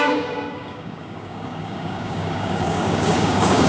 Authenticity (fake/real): fake